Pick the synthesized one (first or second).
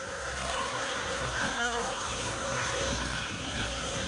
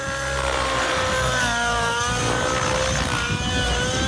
first